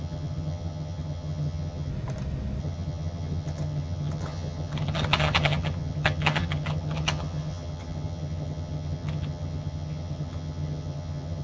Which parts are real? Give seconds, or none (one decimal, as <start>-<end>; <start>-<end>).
1.9-2.6